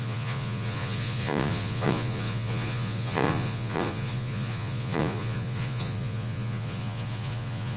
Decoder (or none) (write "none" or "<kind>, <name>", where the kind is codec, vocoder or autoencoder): vocoder, Vocos